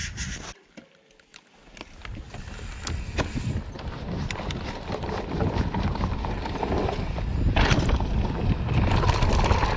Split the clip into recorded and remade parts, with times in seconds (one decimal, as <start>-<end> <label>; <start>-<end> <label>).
0.0-9.8 recorded